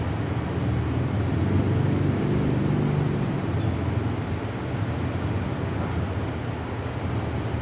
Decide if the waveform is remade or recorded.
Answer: recorded